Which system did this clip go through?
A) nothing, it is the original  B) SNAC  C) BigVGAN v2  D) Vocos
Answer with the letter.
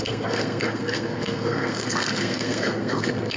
B